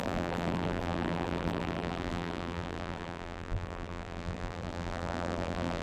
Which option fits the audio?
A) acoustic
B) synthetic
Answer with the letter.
B